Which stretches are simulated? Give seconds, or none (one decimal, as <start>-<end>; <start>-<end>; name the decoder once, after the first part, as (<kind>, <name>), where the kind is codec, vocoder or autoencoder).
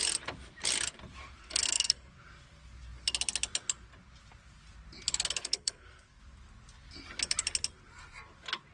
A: 1.4-2.1 (codec, SNAC); 5.4-6.2